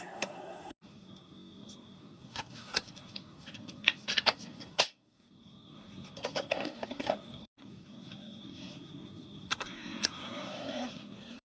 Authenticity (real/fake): fake